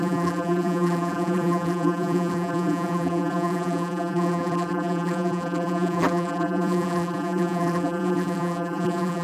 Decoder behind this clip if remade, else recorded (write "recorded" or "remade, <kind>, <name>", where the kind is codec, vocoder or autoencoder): remade, vocoder, BigVGAN v2